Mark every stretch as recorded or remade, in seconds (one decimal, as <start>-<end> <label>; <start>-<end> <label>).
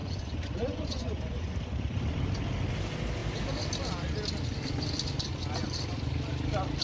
0.0-1.5 remade; 1.5-6.8 recorded